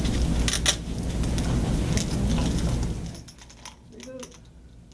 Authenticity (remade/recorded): recorded